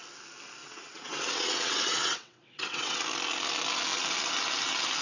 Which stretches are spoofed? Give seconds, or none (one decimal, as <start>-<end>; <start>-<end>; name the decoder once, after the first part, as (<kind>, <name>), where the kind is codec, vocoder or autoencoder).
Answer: 0.6-3.0 (vocoder, WaveNeXt)